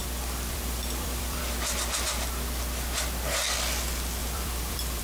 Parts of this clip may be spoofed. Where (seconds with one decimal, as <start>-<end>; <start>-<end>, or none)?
0.0-1.4; 4.2-5.0